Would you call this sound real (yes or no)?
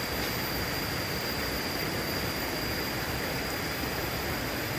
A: yes